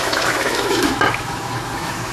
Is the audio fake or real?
fake